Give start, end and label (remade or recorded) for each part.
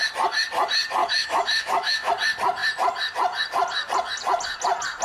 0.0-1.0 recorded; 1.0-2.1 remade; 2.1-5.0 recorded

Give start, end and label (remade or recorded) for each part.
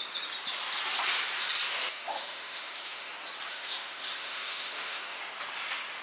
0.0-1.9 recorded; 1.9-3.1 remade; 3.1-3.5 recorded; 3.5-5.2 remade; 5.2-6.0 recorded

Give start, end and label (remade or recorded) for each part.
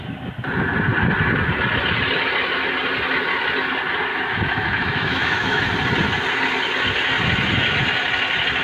0.0-4.1 recorded; 4.1-5.6 remade; 5.6-8.6 recorded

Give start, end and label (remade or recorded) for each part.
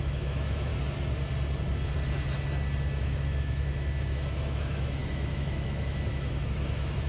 0.0-0.7 remade; 0.7-3.0 recorded; 3.0-7.1 remade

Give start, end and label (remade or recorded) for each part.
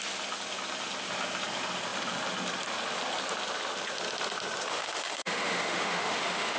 0.0-4.7 recorded; 4.7-6.6 remade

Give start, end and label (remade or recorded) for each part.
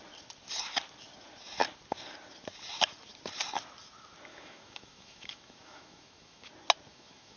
0.0-4.3 recorded; 4.3-6.5 remade; 6.5-6.9 recorded; 6.9-7.4 remade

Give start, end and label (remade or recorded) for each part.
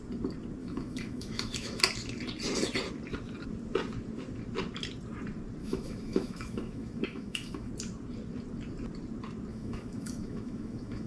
0.0-0.6 recorded; 0.6-1.8 remade; 1.8-5.6 recorded; 5.6-7.7 remade; 7.7-9.5 recorded; 9.5-11.1 remade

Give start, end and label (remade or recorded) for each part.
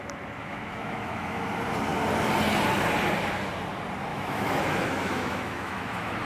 0.0-0.4 recorded; 0.4-1.4 remade; 1.4-4.1 recorded; 4.1-6.3 remade